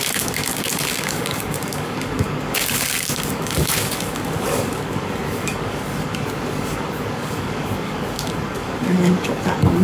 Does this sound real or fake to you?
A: fake